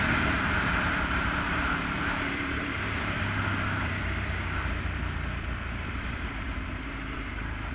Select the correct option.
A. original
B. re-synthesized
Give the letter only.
B